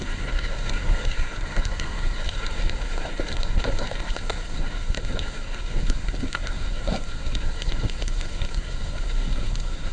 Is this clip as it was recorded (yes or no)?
no